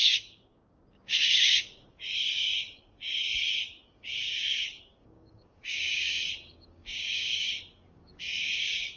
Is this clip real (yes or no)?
no